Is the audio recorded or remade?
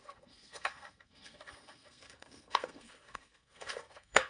remade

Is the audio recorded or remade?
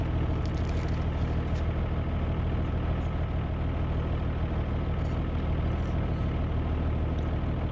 recorded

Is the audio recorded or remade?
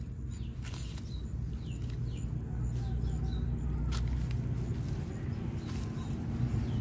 recorded